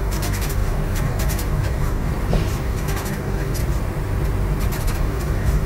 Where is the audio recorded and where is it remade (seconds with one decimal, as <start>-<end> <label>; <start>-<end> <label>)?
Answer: 0.0-2.1 remade; 2.1-2.6 recorded; 2.6-3.6 remade; 3.6-4.8 recorded; 4.8-5.7 remade